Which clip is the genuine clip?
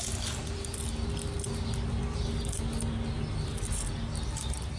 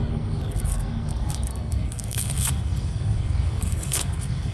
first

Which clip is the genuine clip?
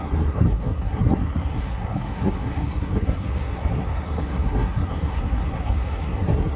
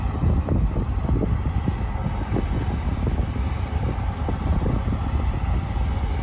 second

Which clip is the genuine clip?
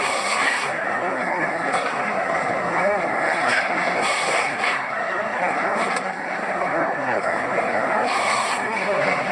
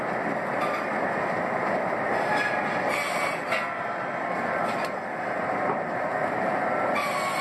second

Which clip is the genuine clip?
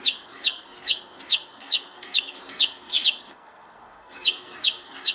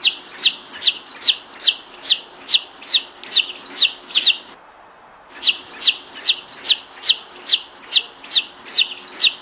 second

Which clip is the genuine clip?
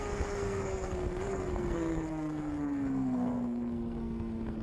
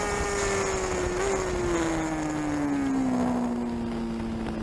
second